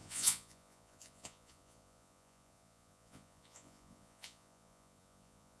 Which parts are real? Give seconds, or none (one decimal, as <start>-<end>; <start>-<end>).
none